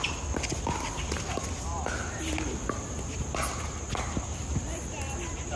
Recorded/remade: recorded